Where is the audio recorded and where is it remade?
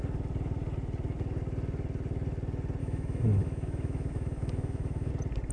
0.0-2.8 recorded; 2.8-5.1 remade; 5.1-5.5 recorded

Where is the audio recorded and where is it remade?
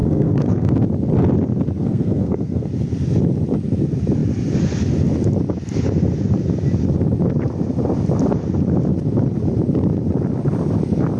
0.0-0.7 remade; 0.7-1.8 recorded; 1.8-2.7 remade; 2.7-11.2 recorded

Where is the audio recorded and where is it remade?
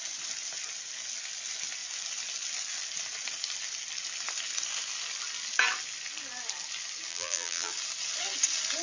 0.0-7.1 recorded; 7.1-7.7 remade; 7.7-8.8 recorded